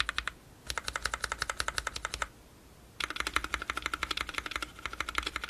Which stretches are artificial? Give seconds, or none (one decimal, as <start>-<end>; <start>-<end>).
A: none

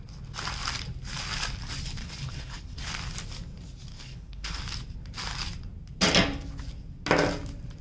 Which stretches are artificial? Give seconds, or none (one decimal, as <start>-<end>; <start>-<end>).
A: 2.0-2.8; 3.9-4.6

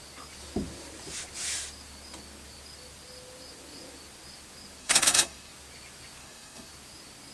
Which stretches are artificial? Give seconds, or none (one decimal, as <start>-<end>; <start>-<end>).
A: 4.8-5.5; 6.2-6.7